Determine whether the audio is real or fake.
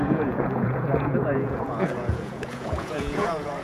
fake